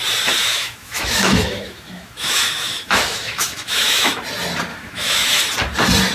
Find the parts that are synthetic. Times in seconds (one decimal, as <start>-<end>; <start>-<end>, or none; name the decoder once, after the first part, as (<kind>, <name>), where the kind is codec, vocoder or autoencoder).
0.4-4.1 (autoencoder, DAC-VAE); 4.7-5.4